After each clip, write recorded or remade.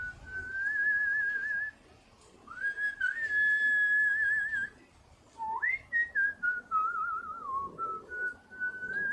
recorded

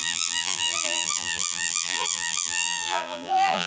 remade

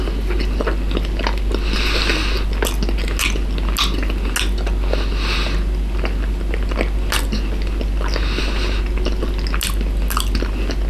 recorded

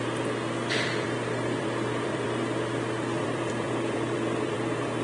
remade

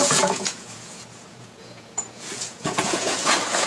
remade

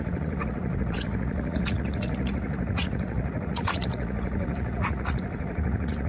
remade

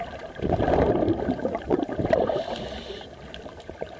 recorded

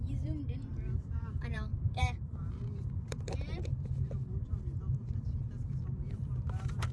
remade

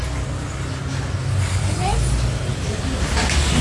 recorded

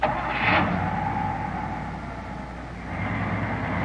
recorded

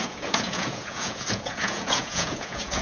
remade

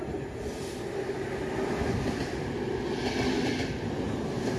recorded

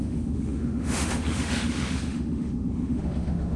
remade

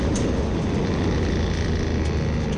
recorded